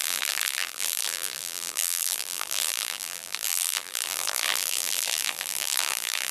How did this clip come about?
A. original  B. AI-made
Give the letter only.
B